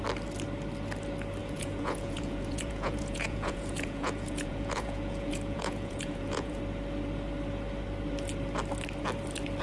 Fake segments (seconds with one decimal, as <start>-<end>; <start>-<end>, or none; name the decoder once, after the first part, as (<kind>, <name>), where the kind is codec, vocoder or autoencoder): 1.4-6.6 (vocoder, Vocos)